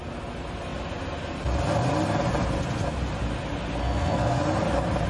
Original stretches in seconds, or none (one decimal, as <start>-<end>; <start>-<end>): 0.0-3.8; 4.4-5.1